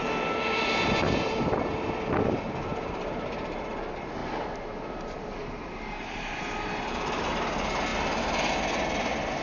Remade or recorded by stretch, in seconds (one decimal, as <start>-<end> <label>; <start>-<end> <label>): 0.0-2.7 recorded; 2.7-3.8 remade; 3.8-4.2 recorded; 4.2-6.3 remade; 6.3-9.4 recorded